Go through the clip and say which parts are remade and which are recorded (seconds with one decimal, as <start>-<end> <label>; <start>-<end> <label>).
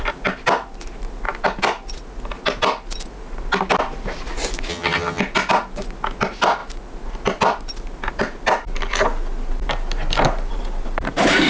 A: 0.0-4.7 recorded; 4.7-5.2 remade; 5.2-11.5 recorded